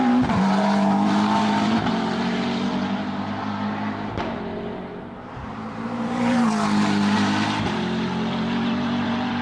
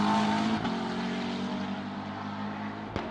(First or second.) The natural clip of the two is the second